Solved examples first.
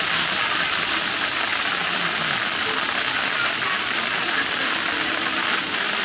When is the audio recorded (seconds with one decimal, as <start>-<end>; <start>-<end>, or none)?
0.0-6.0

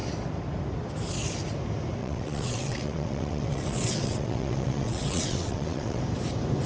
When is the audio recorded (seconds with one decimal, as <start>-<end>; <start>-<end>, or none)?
0.0-2.0; 6.0-6.7

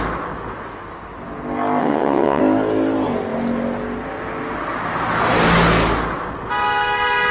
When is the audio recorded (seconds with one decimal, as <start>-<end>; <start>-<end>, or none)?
0.0-1.8; 2.4-7.3

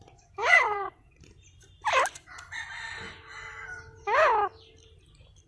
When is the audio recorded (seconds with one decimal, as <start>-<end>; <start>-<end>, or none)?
0.0-0.5; 1.2-5.5

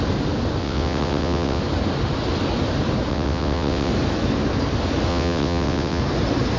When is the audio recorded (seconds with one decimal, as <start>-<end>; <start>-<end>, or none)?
0.0-0.6; 1.6-3.1; 3.9-5.1; 6.0-6.6

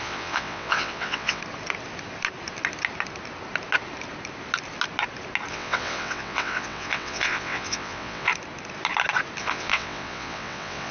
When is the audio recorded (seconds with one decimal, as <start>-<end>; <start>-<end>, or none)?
1.4-5.5; 8.3-9.4